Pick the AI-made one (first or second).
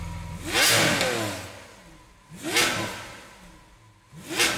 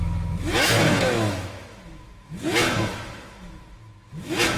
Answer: second